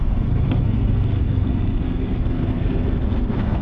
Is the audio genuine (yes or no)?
no